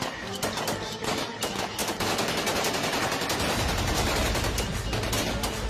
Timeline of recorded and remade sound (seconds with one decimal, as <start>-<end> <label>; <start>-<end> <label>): 0.0-5.7 recorded